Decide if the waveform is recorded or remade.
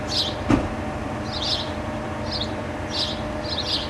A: remade